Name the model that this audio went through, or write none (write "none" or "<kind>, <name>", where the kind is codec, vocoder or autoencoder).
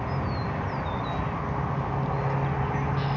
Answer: none